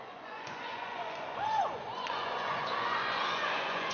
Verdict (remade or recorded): remade